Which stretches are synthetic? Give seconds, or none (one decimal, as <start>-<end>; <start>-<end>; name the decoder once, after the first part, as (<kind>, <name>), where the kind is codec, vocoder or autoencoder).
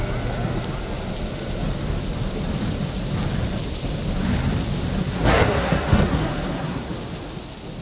5.0-6.9 (codec, SNAC)